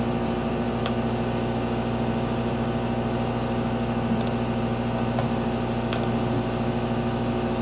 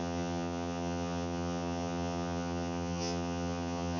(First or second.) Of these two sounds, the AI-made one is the second